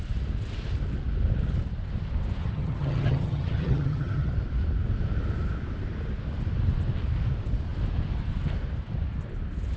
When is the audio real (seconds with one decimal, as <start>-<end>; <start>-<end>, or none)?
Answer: 0.0-2.4; 4.3-9.8